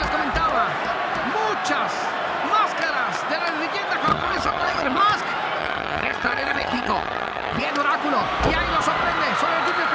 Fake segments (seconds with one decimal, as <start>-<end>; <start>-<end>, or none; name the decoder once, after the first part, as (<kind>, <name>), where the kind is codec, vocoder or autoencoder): 4.1-5.0 (vocoder, HiFi-GAN); 5.6-7.6